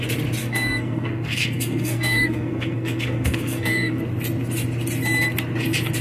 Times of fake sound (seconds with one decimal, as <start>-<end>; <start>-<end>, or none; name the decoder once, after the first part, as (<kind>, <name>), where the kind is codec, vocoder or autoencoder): 0.4-4.0 (codec, SNAC)